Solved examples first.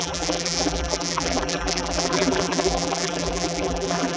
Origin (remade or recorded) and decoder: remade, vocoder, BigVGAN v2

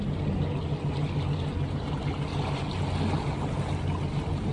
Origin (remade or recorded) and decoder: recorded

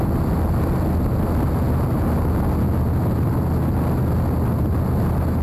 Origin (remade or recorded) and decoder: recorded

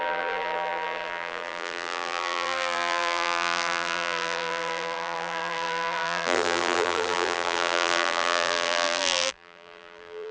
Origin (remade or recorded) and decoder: remade, vocoder, BigVGAN v2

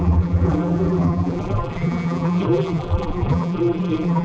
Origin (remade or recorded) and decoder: remade, vocoder, BigVGAN v2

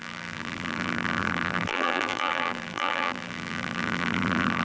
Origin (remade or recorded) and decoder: remade, vocoder, BigVGAN v2